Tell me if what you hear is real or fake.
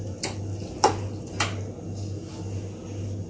real